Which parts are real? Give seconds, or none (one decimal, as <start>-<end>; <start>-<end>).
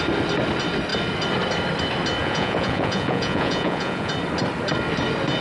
0.0-2.2; 4.1-5.4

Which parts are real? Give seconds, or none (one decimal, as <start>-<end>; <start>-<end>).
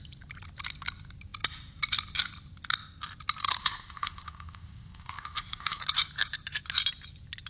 0.0-3.6; 5.8-7.5